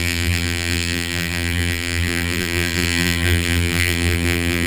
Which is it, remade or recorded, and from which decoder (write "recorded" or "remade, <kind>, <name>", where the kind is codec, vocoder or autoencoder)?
remade, vocoder, BigVGAN v2